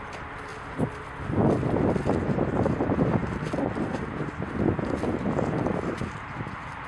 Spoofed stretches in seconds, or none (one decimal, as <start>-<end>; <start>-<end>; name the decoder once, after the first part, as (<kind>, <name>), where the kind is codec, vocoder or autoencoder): 0.5-1.0 (vocoder, BigVGAN v2)